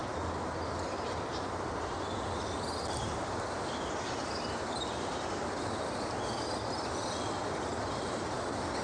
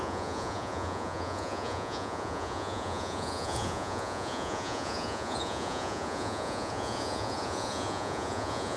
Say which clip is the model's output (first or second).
second